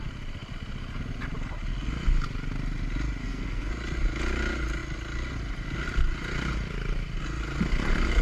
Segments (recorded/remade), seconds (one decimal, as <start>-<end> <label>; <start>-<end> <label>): 0.0-3.2 recorded; 3.2-3.7 remade; 3.7-8.2 recorded